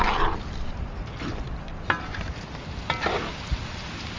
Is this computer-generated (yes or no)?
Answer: no